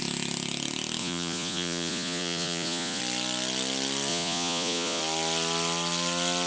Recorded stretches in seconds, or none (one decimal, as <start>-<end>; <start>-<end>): 0.0-1.0; 3.0-4.1; 5.0-6.5